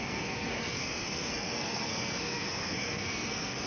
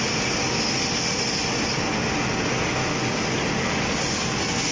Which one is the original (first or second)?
second